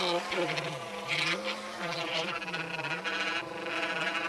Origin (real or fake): real